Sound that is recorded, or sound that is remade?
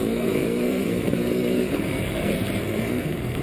remade